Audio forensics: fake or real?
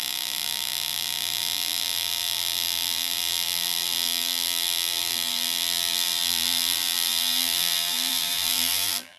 fake